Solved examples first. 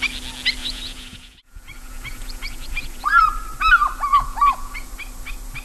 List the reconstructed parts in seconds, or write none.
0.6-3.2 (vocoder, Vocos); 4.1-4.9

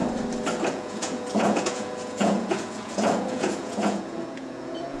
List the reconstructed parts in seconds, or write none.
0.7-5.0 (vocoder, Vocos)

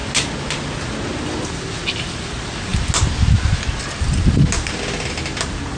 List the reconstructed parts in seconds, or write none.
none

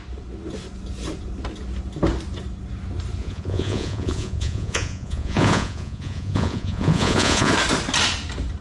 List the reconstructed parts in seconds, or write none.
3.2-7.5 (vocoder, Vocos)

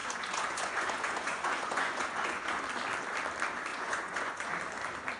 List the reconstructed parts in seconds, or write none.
0.0-2.6 (vocoder, Vocos); 3.7-4.5

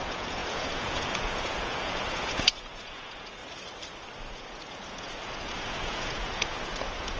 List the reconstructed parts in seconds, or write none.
0.0-3.4 (vocoder, Vocos); 4.3-7.2

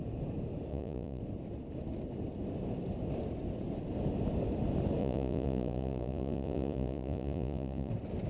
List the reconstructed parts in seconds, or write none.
0.7-1.2 (vocoder, Vocos); 5.0-7.9

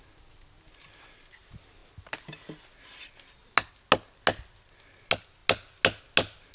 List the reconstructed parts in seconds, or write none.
none